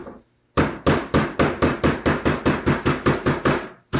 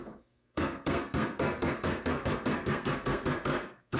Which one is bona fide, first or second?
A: first